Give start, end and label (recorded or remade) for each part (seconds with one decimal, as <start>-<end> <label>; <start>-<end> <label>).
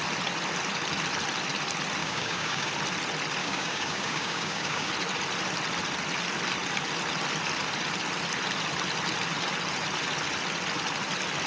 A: 0.0-2.0 recorded; 2.0-2.7 remade; 2.7-3.4 recorded; 3.4-4.9 remade; 4.9-11.5 recorded